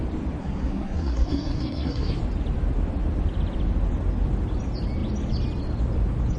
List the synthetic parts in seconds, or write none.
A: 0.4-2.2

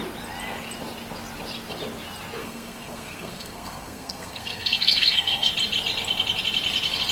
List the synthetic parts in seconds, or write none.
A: 2.4-5.5

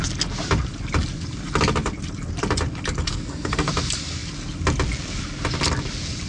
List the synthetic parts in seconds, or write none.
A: 3.1-3.7

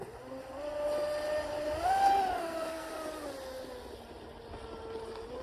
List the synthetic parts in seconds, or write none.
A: 2.4-2.9

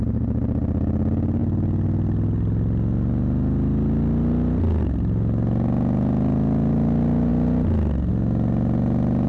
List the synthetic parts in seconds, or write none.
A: none

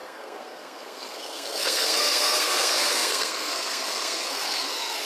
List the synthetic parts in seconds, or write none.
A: 0.0-5.1

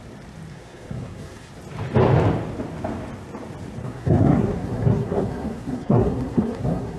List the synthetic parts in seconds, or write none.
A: 0.5-1.5; 3.8-7.0

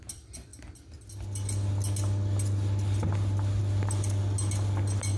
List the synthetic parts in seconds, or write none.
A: none